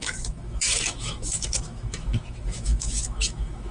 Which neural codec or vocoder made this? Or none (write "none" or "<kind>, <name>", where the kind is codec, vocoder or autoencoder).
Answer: autoencoder, DAC-VAE